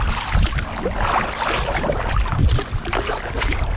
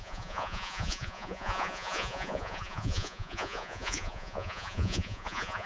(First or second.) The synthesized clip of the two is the second